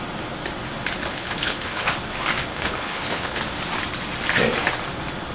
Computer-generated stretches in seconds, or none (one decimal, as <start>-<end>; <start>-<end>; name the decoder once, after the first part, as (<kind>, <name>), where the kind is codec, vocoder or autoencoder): 1.1-1.9 (codec, HILCodec); 2.5-3.4